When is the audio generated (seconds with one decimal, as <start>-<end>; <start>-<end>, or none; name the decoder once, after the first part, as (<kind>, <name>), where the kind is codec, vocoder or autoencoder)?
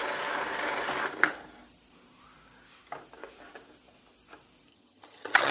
4.7-5.5 (vocoder, HiFi-GAN)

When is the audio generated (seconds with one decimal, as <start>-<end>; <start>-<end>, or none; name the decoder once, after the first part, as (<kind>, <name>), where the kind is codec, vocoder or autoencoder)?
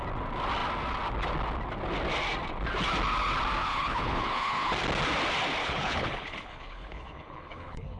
3.6-4.7 (codec, HILCodec); 5.6-8.0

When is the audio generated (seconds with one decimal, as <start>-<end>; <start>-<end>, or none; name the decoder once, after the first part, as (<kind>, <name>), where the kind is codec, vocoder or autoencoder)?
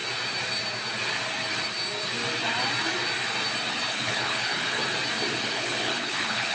3.9-4.8 (codec, HILCodec); 5.4-6.5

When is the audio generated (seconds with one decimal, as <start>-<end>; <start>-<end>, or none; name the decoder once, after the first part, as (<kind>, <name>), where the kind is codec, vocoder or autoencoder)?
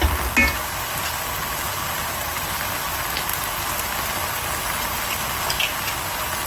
none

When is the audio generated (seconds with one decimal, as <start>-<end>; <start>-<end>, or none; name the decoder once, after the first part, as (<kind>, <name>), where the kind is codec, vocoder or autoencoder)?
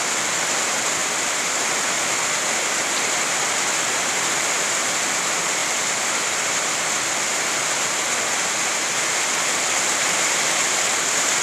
1.0-1.9 (vocoder, BigVGAN v2)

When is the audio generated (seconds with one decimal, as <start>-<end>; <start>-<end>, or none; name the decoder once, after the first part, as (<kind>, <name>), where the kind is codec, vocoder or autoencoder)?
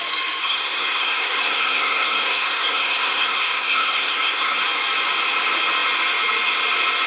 0.4-4.6 (codec, SNAC)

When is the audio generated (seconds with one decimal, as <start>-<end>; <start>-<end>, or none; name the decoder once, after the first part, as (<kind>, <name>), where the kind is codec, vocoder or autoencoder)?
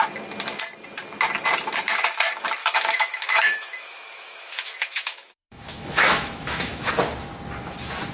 2.6-6.9 (autoencoder, DAC-VAE)